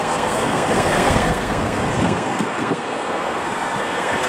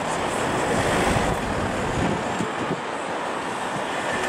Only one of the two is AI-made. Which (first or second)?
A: first